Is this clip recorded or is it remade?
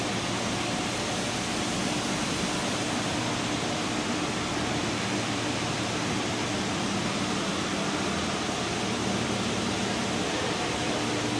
recorded